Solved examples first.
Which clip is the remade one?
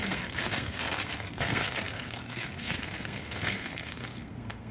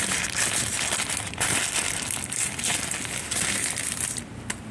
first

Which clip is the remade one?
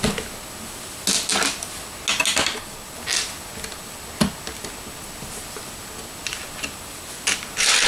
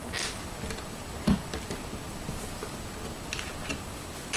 second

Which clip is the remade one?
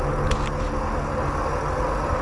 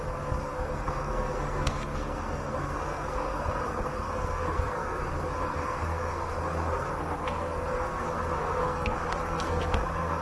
second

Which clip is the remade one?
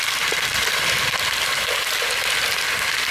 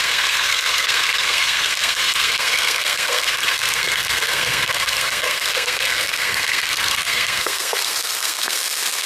second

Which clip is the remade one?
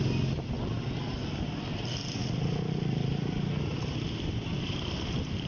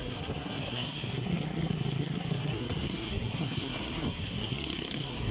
second